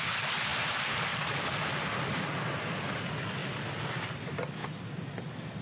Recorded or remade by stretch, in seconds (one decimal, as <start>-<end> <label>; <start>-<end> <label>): 0.0-3.4 recorded; 3.4-4.0 remade; 4.0-5.6 recorded